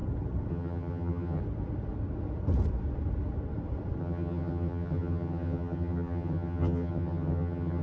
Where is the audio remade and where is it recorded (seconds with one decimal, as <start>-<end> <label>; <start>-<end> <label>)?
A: 0.0-0.5 recorded; 0.5-1.4 remade; 1.4-4.0 recorded; 4.0-7.8 remade